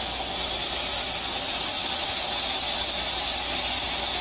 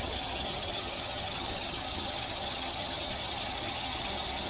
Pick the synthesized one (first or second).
second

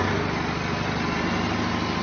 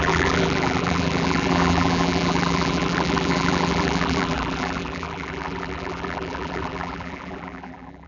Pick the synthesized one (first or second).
second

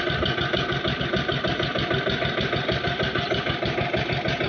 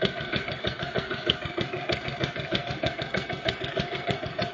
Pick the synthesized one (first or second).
second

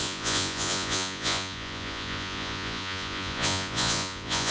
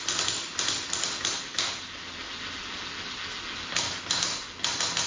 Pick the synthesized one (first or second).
first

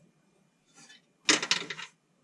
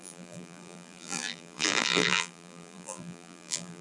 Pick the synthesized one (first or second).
second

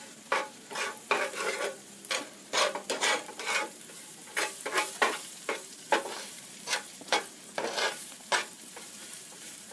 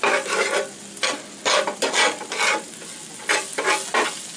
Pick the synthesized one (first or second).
first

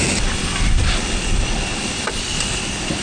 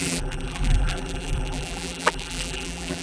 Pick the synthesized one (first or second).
second